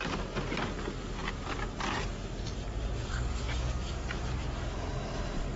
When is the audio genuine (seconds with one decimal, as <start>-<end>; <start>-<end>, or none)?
0.0-5.6

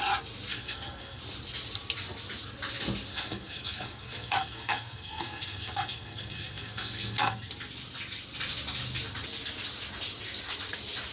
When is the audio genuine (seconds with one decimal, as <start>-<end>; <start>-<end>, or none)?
0.0-0.5; 1.2-3.1; 7.5-11.1

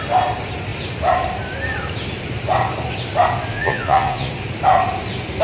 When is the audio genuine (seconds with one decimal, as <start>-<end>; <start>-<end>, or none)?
0.0-3.5; 4.3-5.4

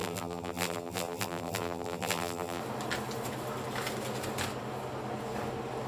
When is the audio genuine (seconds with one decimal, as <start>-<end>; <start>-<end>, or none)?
2.6-5.9

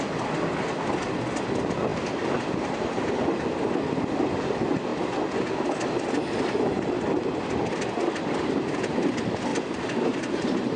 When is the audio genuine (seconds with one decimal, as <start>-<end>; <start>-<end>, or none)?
0.0-1.9; 3.1-9.5